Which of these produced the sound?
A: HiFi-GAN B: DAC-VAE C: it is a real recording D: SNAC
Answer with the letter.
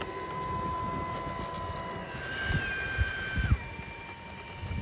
C